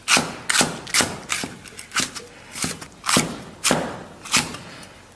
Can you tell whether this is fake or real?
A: real